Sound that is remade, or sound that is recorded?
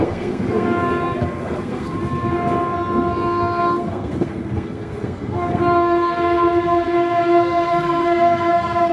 remade